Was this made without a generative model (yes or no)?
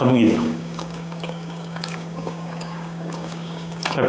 no